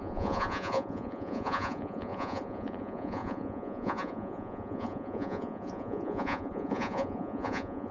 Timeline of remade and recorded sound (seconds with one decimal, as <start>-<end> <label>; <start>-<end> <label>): 0.0-7.9 remade